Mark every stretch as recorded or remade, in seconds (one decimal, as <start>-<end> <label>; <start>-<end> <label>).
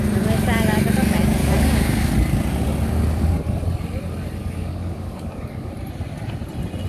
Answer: 0.0-1.4 recorded; 1.4-2.1 remade; 2.1-4.4 recorded; 4.4-5.7 remade; 5.7-6.9 recorded